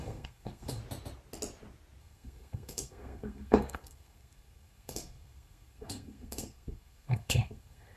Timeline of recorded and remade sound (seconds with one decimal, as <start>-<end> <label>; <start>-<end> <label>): 0.0-0.8 remade; 0.8-2.0 recorded; 2.0-8.0 remade